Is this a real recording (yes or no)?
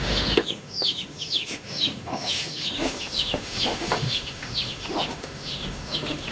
no